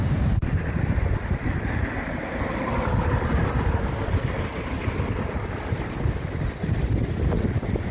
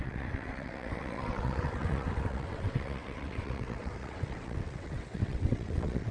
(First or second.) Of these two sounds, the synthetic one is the second